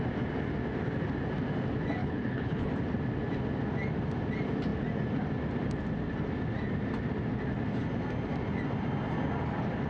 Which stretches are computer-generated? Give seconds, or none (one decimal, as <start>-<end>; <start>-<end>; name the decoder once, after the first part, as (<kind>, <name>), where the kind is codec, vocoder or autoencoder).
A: 2.0-2.7 (codec, HILCodec)